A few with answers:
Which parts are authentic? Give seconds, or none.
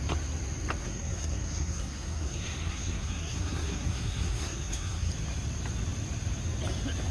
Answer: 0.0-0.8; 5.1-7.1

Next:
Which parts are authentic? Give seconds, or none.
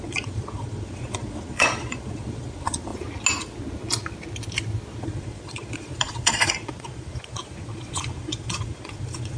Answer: 2.9-5.0